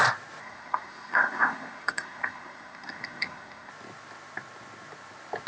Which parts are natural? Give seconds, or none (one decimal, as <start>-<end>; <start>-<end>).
0.0-0.4; 3.7-5.5